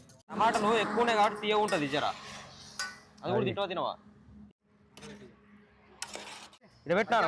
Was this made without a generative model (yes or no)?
yes